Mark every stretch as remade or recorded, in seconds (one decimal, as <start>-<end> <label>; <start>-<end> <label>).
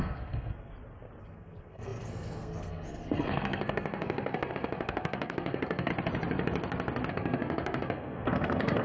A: 0.0-0.7 remade; 0.7-1.2 recorded; 1.2-5.9 remade; 5.9-7.1 recorded; 7.1-8.8 remade